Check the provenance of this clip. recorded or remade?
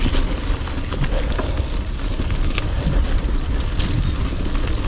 recorded